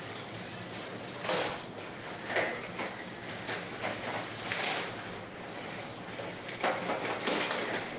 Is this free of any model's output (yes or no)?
yes